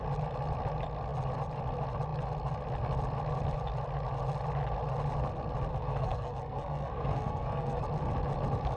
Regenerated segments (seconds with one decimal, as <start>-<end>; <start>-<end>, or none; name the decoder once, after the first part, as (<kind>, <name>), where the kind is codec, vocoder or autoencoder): 5.7-7.8 (codec, SNAC)

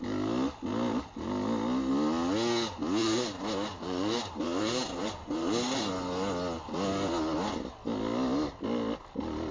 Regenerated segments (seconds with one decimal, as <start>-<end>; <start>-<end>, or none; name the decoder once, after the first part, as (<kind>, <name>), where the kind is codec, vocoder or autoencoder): 3.0-5.9 (vocoder, BigVGAN v2)